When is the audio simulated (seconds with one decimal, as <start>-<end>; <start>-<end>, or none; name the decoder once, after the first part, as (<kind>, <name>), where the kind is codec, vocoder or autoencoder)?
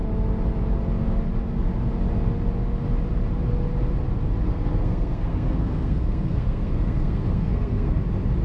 4.5-8.0 (codec, SNAC)